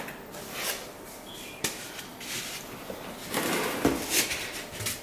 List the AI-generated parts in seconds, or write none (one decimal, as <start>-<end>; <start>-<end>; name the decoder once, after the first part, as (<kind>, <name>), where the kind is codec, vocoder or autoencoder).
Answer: none